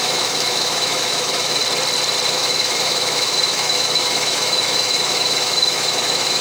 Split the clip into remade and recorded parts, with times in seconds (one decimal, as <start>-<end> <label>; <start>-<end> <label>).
0.0-1.6 remade; 1.6-2.3 recorded; 2.3-6.4 remade